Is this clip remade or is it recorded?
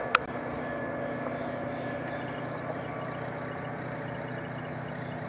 recorded